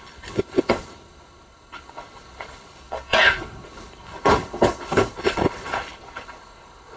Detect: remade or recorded remade